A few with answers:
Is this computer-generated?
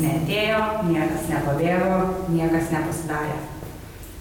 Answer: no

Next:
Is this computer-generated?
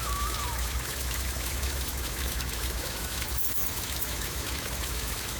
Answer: yes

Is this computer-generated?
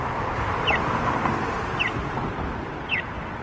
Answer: no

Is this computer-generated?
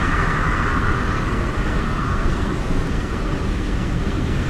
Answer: yes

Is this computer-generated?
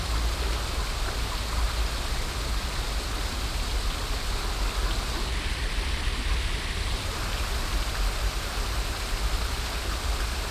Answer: no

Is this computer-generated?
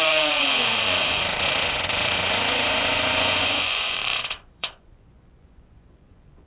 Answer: yes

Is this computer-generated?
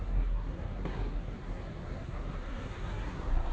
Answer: yes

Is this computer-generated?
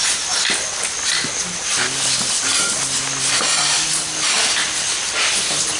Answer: no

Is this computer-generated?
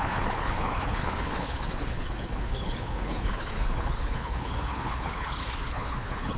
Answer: yes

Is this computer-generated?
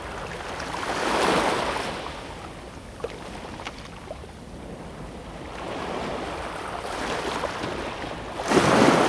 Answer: no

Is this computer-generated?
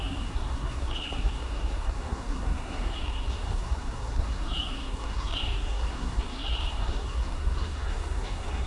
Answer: yes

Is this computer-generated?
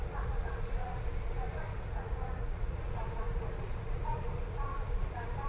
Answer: yes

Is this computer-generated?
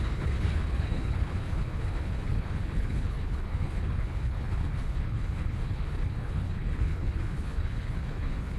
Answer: yes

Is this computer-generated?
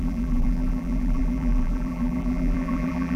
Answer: yes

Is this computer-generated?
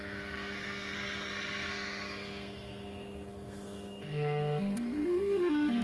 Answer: yes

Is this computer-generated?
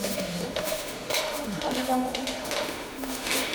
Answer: yes